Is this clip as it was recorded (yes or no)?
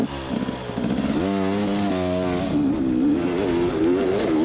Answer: yes